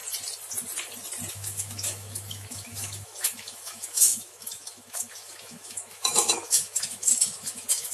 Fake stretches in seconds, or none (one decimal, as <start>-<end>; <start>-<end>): 1.3-7.9